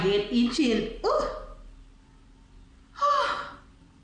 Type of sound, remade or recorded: recorded